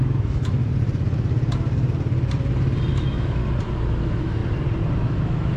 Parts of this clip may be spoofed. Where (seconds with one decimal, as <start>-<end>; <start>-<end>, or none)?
0.0-0.6; 2.9-3.4; 4.0-4.4; 5.0-5.6